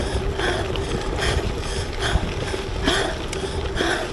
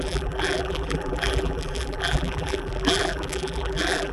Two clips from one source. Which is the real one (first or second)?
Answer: first